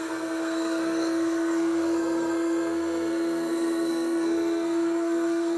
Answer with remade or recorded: remade